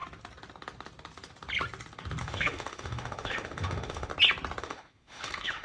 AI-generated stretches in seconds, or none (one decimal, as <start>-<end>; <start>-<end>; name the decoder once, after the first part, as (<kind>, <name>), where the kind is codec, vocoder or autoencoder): 2.2-4.1 (autoencoder, DAC-VAE); 4.6-5.6